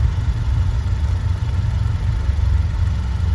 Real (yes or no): yes